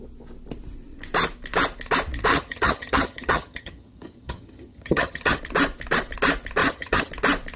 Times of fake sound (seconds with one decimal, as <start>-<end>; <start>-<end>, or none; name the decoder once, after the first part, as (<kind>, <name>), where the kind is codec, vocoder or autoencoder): 2.3-5.4 (vocoder, HiFi-GAN); 6.6-7.1